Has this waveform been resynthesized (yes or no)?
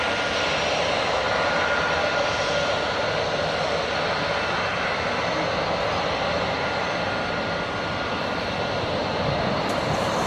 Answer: no